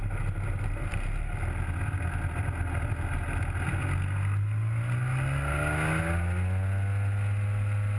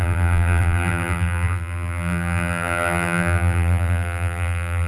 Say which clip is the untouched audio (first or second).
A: first